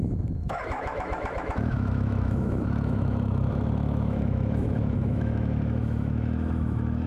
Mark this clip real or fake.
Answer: fake